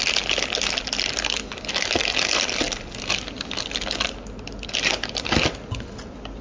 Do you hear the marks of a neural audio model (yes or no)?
no